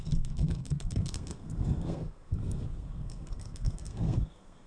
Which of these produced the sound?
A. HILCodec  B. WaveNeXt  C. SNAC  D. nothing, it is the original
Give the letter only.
C